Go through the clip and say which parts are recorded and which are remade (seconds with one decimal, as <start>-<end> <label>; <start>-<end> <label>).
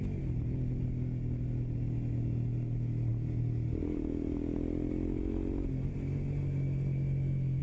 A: 0.0-7.6 recorded